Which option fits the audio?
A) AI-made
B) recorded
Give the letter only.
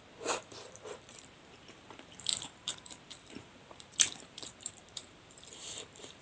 A